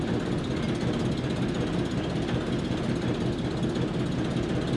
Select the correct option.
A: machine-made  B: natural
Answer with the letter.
B